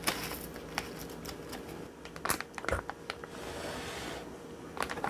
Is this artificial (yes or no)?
no